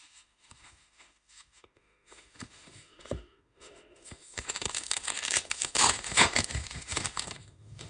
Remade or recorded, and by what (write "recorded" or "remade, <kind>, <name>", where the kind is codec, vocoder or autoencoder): remade, autoencoder, DAC-VAE